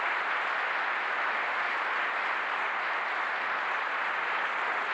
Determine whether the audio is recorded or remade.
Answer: recorded